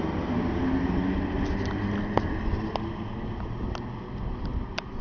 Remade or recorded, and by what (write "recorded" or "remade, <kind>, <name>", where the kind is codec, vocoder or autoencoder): recorded